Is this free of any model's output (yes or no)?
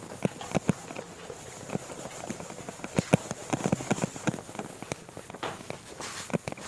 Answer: yes